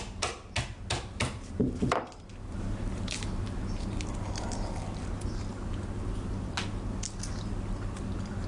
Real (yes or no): yes